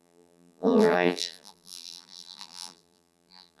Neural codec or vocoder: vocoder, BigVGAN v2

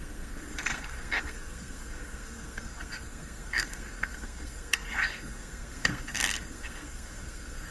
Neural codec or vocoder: codec, SNAC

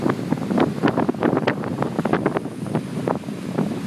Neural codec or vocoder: none